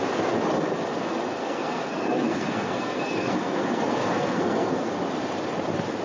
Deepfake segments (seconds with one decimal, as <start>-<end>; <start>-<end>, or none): 1.4-5.0